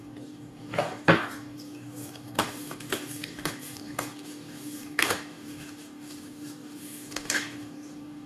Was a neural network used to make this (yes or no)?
yes